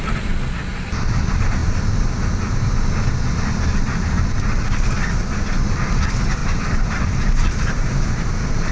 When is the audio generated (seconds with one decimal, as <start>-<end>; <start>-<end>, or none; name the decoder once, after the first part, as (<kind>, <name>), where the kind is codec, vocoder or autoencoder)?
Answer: 6.4-8.7 (vocoder, BigVGAN v2)